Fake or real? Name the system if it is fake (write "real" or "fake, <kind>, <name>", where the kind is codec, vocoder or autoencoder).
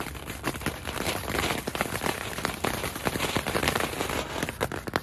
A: real